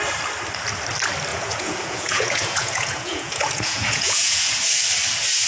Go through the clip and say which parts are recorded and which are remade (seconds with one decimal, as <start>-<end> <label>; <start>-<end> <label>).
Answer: 0.0-1.3 recorded; 1.3-4.6 remade; 4.6-5.5 recorded